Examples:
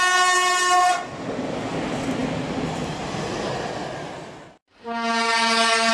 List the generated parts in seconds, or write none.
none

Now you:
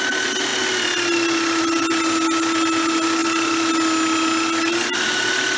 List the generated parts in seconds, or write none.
none

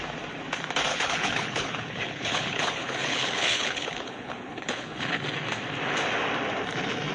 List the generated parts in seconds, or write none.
0.9-5.2

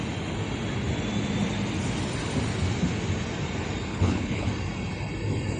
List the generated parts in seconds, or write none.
3.9-4.5

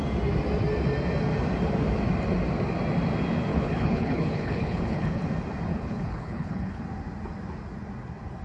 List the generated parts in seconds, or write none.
3.5-5.2; 5.7-6.8